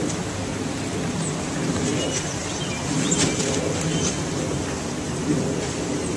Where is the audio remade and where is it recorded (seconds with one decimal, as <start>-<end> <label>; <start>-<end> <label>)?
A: 0.0-0.5 remade; 0.5-1.1 recorded; 1.1-1.9 remade; 1.9-5.6 recorded; 5.6-6.2 remade